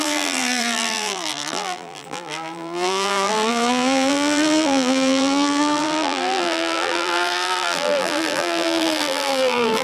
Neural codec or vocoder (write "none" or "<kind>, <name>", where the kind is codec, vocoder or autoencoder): vocoder, BigVGAN v2